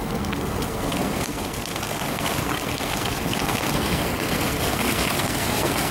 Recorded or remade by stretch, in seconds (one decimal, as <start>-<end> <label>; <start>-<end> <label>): 0.0-5.9 remade